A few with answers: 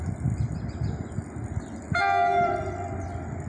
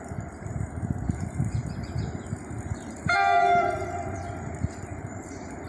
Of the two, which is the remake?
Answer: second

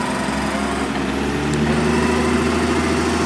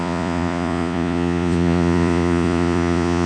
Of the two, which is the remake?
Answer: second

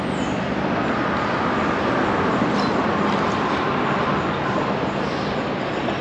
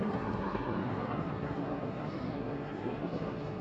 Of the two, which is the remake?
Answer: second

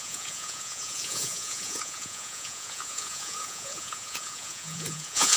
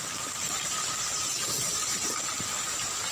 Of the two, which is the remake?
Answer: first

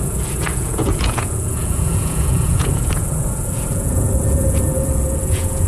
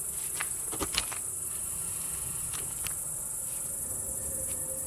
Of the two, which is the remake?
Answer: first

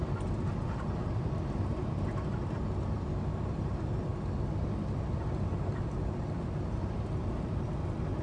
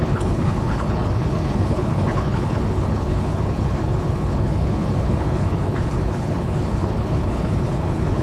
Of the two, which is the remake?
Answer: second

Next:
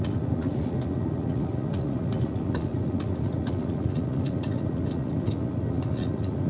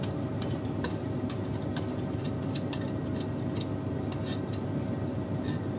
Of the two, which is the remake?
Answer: first